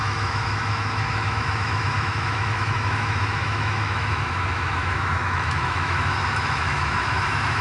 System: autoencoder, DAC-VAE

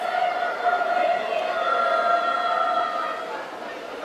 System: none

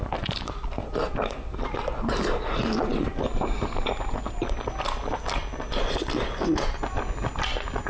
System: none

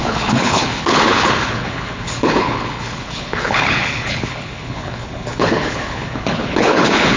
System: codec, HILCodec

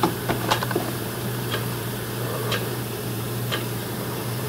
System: vocoder, BigVGAN v2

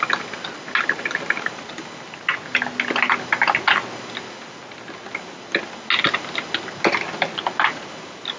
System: none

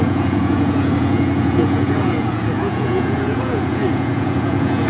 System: vocoder, Vocos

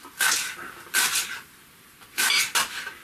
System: none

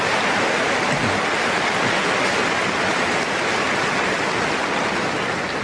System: none